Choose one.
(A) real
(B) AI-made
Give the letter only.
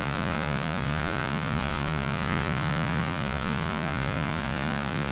B